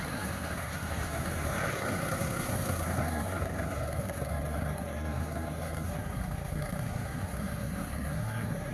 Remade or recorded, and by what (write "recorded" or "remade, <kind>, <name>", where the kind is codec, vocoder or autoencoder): remade, codec, SNAC